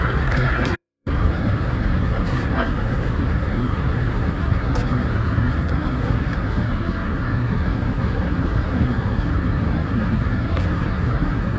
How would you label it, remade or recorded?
remade